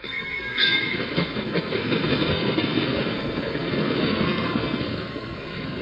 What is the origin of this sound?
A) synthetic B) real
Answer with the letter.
A